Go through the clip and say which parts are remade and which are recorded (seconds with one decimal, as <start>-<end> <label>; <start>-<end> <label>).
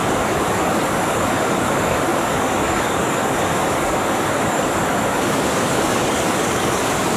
0.0-7.2 remade